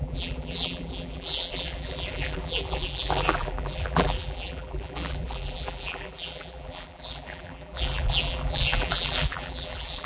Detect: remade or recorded remade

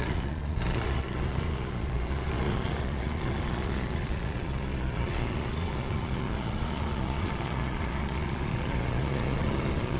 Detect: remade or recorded remade